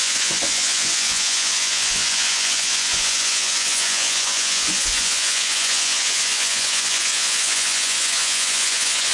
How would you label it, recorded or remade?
remade